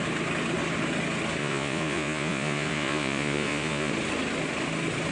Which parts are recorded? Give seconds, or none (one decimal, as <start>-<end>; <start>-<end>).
0.0-1.4; 3.9-5.1

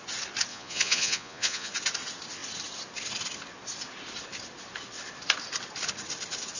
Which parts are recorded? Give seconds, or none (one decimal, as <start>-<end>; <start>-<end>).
0.0-0.5; 1.7-6.6

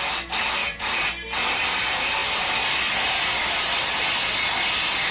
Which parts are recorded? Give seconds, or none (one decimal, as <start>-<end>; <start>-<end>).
0.0-0.6; 1.1-5.1